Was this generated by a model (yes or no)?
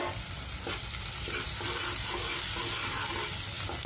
no